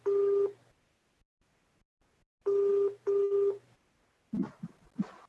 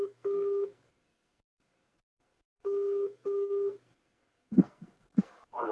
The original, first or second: first